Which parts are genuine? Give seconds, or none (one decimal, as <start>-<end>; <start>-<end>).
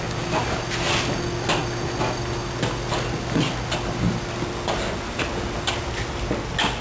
0.0-6.8